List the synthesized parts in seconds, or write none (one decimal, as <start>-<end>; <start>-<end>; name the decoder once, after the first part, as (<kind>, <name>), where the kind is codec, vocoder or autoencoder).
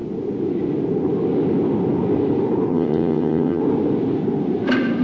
2.7-3.6 (vocoder, HiFi-GAN)